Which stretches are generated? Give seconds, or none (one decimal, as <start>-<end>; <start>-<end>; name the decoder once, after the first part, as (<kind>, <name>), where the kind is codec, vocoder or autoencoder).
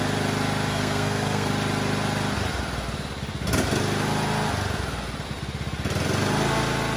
0.7-1.5 (codec, SNAC)